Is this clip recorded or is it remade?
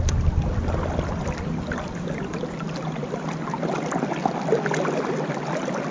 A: recorded